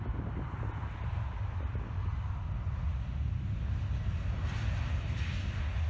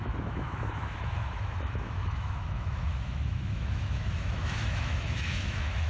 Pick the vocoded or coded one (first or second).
second